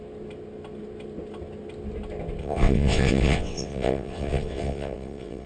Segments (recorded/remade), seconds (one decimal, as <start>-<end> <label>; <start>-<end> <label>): 0.0-2.4 recorded; 2.4-5.5 remade